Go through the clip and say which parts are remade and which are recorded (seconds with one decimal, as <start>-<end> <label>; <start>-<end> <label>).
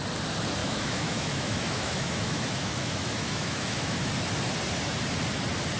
0.0-0.6 recorded; 0.6-4.1 remade; 4.1-5.8 recorded